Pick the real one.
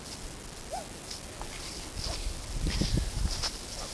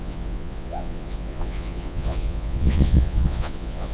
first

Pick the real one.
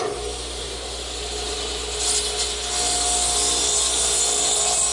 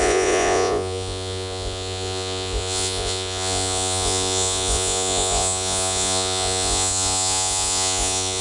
first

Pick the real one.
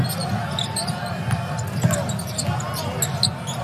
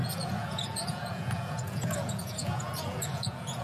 first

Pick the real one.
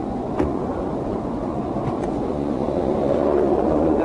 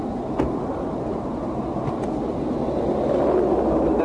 second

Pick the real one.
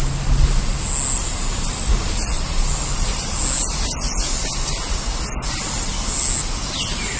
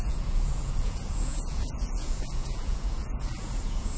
first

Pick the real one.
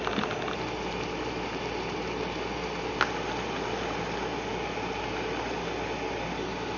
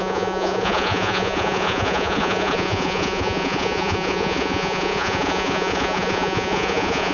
first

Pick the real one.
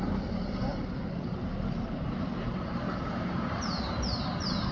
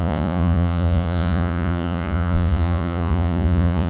first